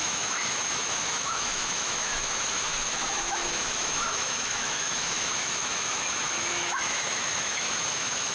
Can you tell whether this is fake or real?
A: fake